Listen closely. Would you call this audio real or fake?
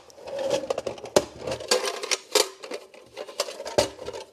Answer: real